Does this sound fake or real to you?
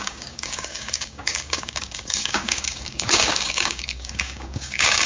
fake